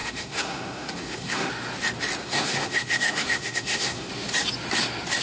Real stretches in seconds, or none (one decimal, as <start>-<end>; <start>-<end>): 1.5-2.2; 4.1-5.2